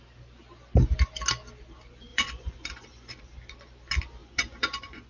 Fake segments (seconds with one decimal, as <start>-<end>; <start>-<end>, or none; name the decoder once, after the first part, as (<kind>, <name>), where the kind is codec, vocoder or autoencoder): 2.1-3.2 (vocoder, Vocos); 4.2-5.1